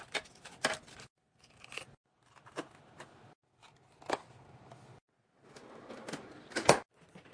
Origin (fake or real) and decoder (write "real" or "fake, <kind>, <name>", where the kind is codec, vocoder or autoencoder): real